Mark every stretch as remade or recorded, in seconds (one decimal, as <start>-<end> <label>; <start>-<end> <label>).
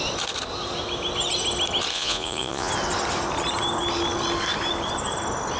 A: 0.0-1.9 recorded; 1.9-2.7 remade; 2.7-5.6 recorded